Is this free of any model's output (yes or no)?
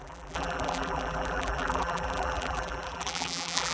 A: no